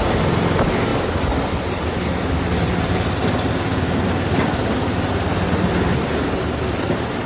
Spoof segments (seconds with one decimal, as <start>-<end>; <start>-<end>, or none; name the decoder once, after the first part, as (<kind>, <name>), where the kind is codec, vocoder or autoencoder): 0.9-2.2 (vocoder, BigVGAN v2)